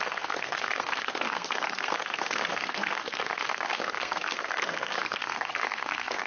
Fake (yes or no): yes